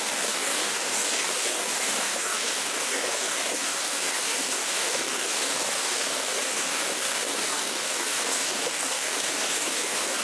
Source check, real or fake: fake